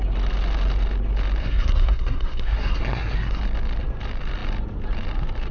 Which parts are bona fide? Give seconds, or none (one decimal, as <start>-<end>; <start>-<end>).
0.0-1.4; 3.4-5.5